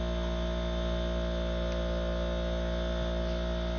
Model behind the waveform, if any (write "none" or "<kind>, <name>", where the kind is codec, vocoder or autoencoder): none